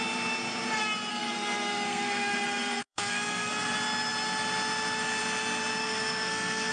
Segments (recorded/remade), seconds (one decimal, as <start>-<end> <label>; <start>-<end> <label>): 0.0-1.1 recorded; 1.1-3.5 remade; 3.5-5.8 recorded; 5.8-6.7 remade